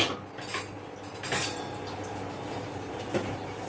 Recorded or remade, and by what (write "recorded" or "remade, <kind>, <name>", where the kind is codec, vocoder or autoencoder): recorded